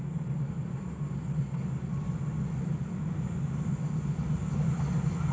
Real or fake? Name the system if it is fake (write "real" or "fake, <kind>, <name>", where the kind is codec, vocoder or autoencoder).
real